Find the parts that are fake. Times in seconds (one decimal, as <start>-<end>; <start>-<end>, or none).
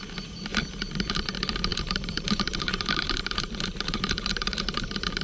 0.0-0.5; 1.0-5.2